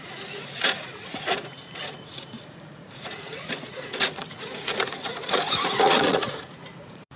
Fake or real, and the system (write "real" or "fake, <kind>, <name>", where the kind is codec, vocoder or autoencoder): fake, vocoder, Vocos